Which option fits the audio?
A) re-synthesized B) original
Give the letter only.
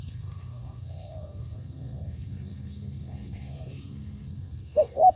A